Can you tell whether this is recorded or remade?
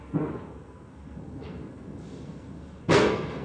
remade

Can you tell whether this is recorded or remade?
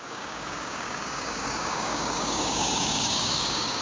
remade